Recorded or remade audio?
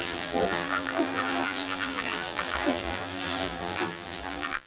remade